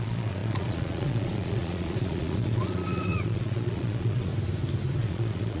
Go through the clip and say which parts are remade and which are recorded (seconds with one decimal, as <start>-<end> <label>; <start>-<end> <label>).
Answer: 0.0-4.3 remade; 4.3-5.0 recorded; 5.0-5.6 remade